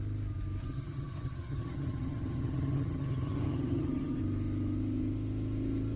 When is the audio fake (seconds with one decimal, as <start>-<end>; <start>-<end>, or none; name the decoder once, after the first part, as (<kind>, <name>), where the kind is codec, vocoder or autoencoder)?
0.6-4.2 (vocoder, HiFi-GAN)

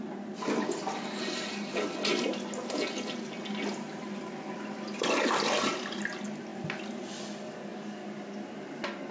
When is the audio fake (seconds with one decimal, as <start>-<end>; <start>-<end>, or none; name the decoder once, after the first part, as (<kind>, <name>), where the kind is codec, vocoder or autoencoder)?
none